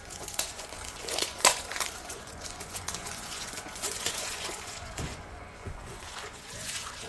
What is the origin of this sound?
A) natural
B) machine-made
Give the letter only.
B